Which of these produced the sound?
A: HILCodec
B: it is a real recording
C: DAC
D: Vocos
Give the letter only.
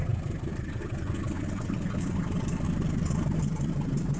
B